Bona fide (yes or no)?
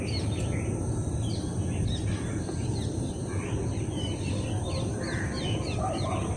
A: yes